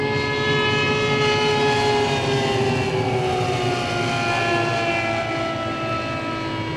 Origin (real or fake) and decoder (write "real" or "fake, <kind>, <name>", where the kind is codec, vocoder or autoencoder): real